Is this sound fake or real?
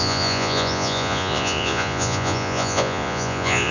fake